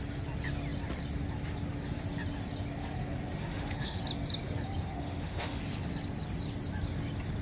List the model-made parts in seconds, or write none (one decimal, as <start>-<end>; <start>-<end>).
3.5-4.0; 4.9-5.6